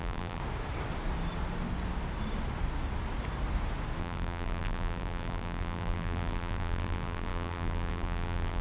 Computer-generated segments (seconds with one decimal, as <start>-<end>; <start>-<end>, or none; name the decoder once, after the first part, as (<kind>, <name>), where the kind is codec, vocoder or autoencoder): 0.0-0.4 (vocoder, BigVGAN v2); 4.0-8.6